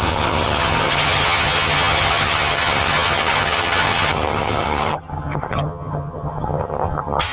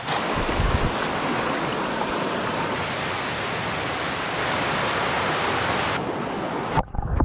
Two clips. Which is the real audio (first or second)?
second